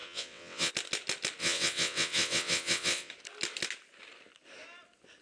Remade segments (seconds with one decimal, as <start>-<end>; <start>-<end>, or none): 0.0-0.7; 1.4-3.1